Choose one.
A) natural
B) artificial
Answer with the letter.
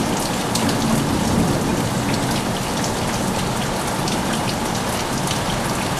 A